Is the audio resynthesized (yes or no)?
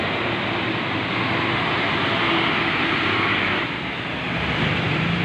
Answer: no